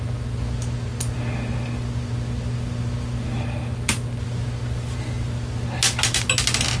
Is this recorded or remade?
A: recorded